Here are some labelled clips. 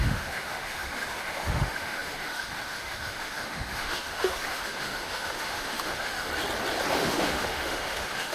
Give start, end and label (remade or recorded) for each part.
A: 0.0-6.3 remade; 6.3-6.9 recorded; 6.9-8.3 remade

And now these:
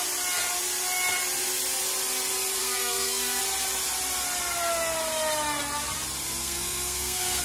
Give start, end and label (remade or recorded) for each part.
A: 0.0-2.6 recorded; 2.6-3.4 remade; 3.4-6.4 recorded; 6.4-7.4 remade